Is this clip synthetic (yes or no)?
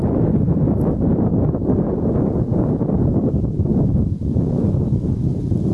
yes